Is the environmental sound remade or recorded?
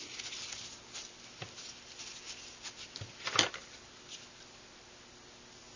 recorded